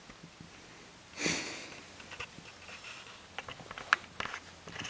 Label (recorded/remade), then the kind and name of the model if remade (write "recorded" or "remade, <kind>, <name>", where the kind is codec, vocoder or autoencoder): recorded